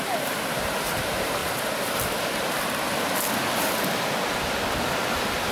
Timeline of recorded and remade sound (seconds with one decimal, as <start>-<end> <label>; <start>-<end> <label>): 0.0-1.4 remade; 1.4-4.6 recorded; 4.6-5.5 remade